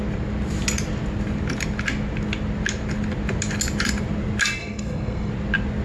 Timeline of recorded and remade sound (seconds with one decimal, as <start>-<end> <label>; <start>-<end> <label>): 0.0-4.6 recorded; 4.6-5.3 remade; 5.3-5.8 recorded